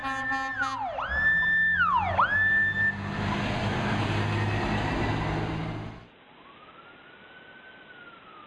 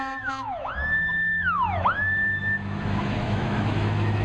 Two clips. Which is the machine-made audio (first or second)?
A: second